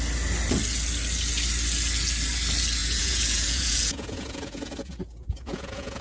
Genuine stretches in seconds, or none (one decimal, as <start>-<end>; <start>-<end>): 0.0-2.8